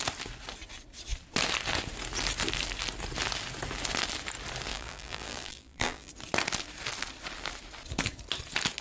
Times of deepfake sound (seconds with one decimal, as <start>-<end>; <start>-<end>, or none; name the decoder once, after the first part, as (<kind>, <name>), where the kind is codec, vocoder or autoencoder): 4.7-6.1 (vocoder, BigVGAN v2)